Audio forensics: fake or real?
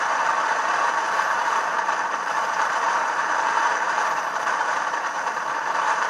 fake